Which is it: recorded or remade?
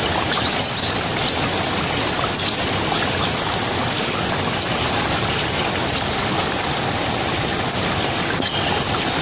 recorded